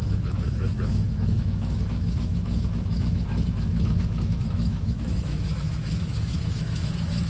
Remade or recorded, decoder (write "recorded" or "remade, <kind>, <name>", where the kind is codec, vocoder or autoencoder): remade, autoencoder, DAC-VAE